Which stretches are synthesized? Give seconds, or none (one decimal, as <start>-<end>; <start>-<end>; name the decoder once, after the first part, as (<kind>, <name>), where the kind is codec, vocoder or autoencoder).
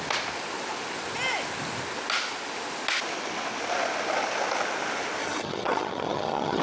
5.2-6.6 (vocoder, HiFi-GAN)